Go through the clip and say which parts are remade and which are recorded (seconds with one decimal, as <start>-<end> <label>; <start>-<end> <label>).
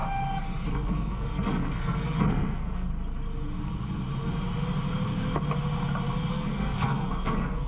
0.0-0.7 recorded; 0.7-2.9 remade; 2.9-6.3 recorded; 6.3-7.7 remade